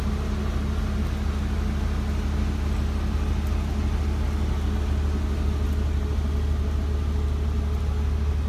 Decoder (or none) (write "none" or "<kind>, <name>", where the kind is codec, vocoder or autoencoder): none